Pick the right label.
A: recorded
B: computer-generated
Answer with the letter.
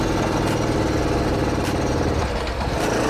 A